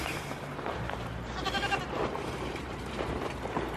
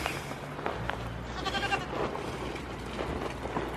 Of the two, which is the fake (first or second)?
first